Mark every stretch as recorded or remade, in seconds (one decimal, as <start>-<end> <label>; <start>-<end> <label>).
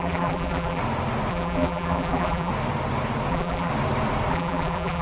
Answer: 0.0-0.8 remade; 0.8-1.3 recorded; 1.3-2.5 remade; 2.5-3.3 recorded; 3.3-3.7 remade; 3.7-4.3 recorded; 4.3-5.0 remade